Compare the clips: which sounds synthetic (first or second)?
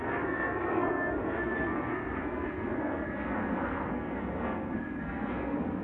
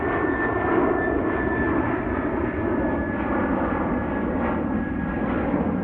first